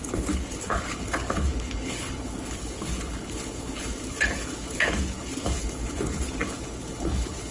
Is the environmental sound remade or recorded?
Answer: remade